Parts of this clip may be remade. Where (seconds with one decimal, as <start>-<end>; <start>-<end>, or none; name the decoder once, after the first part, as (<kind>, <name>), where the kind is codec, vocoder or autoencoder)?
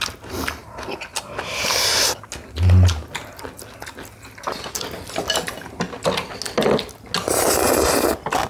0.6-1.3 (vocoder, BigVGAN v2)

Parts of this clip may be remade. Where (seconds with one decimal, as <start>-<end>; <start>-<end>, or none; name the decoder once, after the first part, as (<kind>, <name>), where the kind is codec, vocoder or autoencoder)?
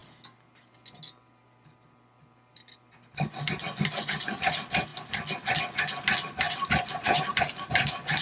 4.0-4.9 (vocoder, BigVGAN v2); 6.3-8.2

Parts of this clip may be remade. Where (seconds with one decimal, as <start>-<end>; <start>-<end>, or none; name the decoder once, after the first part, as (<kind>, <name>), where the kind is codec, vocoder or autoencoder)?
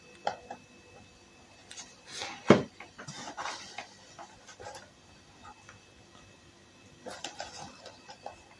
1.6-3.6 (vocoder, BigVGAN v2)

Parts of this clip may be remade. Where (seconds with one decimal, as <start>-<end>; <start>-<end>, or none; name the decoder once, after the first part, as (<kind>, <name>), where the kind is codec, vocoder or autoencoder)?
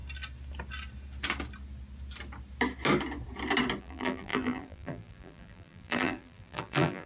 3.8-7.1 (vocoder, BigVGAN v2)